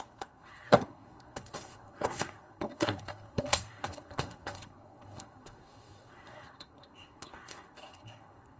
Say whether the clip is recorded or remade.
remade